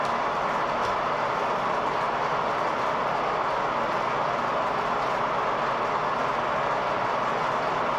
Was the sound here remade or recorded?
recorded